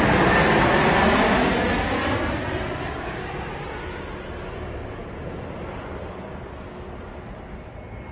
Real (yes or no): yes